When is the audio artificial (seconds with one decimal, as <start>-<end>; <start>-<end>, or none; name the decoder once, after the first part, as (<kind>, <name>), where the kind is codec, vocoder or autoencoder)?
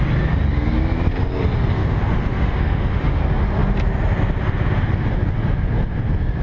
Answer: 1.8-3.2 (autoencoder, DAC-VAE)